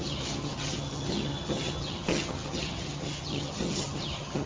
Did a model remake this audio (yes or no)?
yes